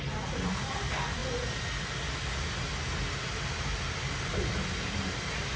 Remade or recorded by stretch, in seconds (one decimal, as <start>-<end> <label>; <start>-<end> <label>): 0.0-5.6 recorded